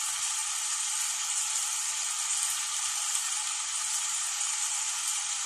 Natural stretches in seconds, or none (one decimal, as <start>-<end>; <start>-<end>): 0.0-5.5